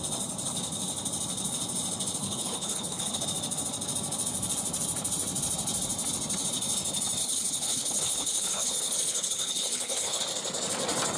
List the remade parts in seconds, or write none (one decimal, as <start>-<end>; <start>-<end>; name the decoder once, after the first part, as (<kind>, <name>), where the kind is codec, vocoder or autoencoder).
2.2-3.2 (codec, HILCodec); 7.2-10.2